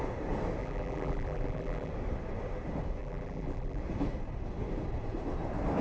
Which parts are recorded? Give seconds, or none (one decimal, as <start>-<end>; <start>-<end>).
0.0-0.6; 1.9-3.0; 3.8-5.8